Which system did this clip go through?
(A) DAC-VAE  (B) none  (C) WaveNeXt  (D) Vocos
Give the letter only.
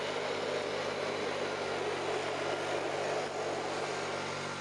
B